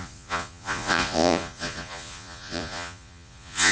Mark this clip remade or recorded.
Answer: remade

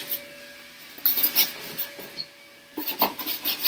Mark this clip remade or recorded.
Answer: recorded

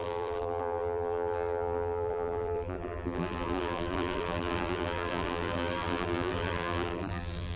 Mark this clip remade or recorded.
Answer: remade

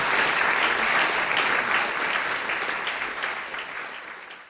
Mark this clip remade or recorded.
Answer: recorded